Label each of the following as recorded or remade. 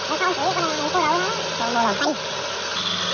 recorded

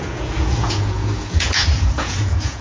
remade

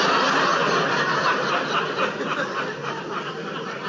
recorded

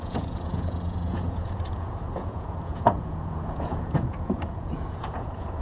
remade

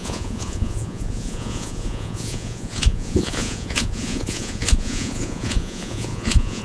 remade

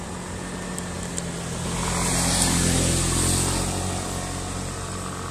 recorded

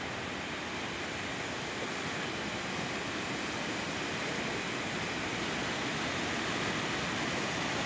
recorded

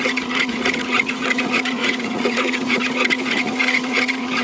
remade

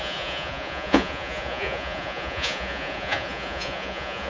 remade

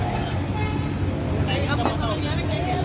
recorded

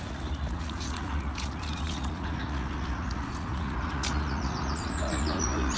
remade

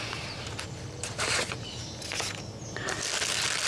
recorded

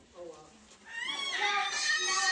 recorded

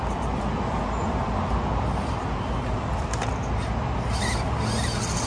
recorded